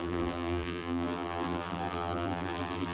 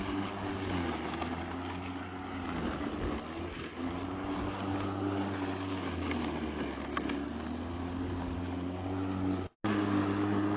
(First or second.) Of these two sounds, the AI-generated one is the first